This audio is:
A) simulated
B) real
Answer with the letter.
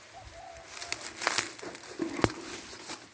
B